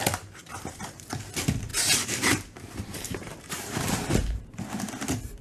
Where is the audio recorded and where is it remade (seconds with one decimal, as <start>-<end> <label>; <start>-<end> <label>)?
0.0-0.4 recorded; 0.4-1.1 remade; 1.1-1.7 recorded; 1.7-4.9 remade; 4.9-5.4 recorded